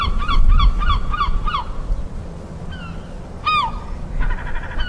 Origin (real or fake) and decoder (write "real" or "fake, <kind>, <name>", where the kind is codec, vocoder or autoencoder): real